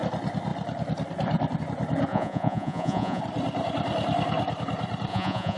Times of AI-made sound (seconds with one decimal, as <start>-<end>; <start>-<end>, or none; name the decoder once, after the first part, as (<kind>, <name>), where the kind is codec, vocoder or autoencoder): 2.1-3.2 (vocoder, Vocos); 5.1-5.6